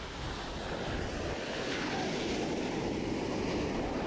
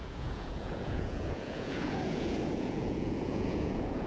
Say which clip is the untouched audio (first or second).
first